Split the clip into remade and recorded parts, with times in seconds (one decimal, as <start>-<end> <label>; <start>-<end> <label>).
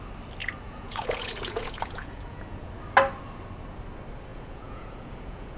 0.0-0.4 recorded; 0.4-2.7 remade; 2.7-4.3 recorded; 4.3-5.6 remade